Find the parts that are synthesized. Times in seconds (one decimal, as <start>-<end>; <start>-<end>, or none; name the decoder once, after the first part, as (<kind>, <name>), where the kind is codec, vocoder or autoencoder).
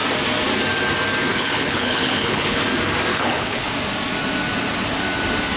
1.3-2.6 (codec, HILCodec); 3.1-3.7